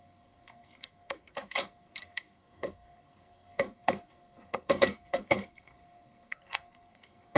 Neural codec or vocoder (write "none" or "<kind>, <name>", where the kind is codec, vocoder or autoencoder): codec, SNAC